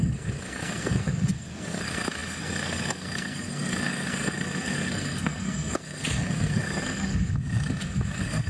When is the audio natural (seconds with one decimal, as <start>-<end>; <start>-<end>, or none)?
none